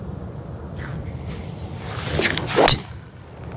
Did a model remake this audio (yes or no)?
no